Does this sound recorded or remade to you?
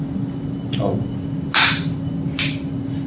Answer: recorded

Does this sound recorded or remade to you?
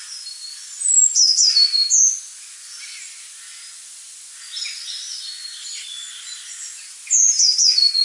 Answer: recorded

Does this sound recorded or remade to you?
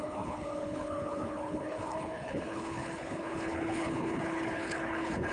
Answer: remade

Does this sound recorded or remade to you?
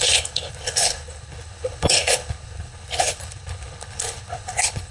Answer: remade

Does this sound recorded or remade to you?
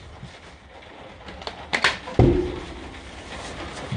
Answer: recorded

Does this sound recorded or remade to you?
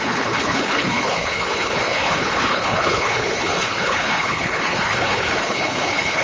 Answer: remade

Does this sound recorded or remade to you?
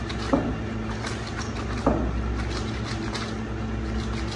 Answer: recorded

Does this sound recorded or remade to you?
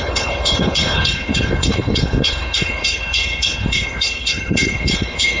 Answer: remade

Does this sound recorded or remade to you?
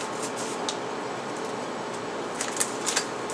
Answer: recorded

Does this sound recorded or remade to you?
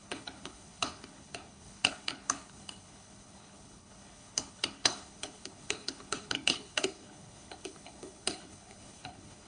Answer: remade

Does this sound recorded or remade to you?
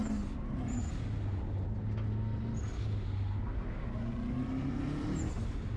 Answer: recorded